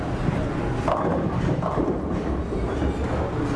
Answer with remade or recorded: recorded